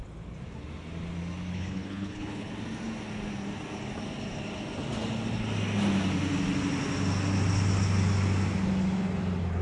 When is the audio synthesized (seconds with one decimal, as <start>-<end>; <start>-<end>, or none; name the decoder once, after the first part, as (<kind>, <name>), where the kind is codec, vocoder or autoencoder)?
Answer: 1.5-2.5 (codec, HILCodec)